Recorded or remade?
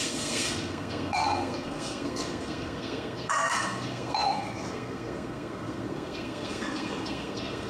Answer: remade